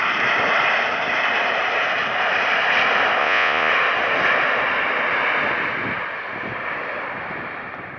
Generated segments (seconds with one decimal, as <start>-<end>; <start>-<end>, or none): 3.2-3.7